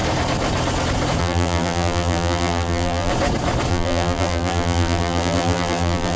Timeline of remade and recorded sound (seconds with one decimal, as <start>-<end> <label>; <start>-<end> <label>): 0.0-1.2 recorded; 1.2-3.1 remade; 3.1-3.7 recorded; 3.7-6.2 remade